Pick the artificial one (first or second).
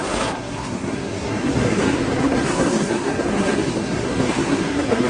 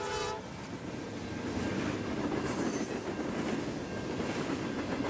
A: first